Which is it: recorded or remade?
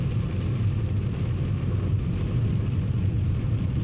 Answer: recorded